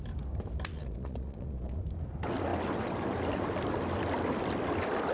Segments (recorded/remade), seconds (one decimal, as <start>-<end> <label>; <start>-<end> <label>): 0.0-0.7 recorded; 0.7-1.8 remade; 1.8-5.1 recorded